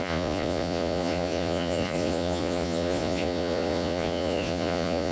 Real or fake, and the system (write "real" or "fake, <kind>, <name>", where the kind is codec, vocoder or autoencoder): fake, vocoder, Vocos